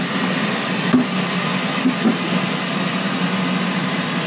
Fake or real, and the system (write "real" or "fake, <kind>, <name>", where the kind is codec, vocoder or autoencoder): real